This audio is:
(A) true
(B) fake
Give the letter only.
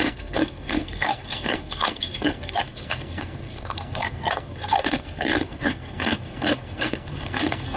B